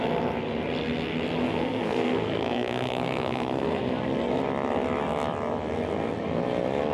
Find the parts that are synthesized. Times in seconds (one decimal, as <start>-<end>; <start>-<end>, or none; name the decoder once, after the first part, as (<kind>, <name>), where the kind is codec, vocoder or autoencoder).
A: 1.4-3.8 (codec, SNAC)